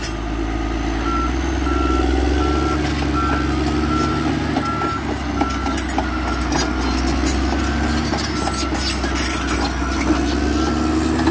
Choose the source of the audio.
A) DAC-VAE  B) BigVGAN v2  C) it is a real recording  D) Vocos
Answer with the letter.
C